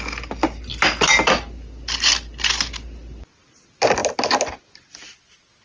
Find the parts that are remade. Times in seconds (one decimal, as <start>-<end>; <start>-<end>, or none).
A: none